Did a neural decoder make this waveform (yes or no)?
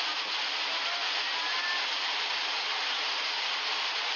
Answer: no